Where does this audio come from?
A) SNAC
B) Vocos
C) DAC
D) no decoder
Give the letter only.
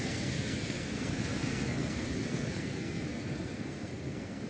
A